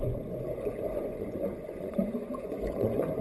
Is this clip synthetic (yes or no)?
yes